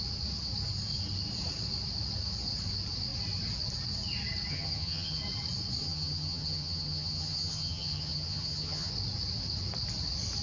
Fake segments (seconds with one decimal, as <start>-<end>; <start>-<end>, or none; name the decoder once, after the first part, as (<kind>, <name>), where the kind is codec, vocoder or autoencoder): 4.5-5.2 (vocoder, HiFi-GAN); 5.8-8.9